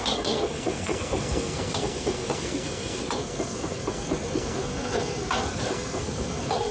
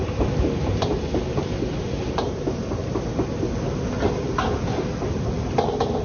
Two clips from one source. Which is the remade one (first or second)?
first